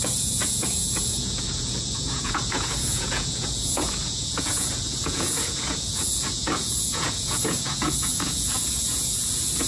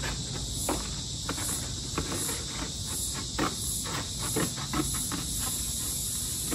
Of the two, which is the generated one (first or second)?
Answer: first